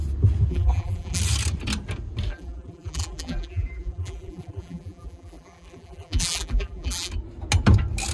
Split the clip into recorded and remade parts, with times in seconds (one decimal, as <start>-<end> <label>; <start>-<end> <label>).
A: 0.0-0.5 recorded; 0.5-1.2 remade; 1.2-2.3 recorded; 2.3-7.1 remade; 7.1-8.1 recorded